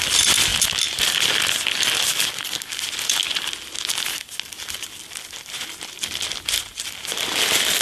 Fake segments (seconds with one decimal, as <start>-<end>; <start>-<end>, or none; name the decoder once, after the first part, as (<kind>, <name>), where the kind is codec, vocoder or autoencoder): none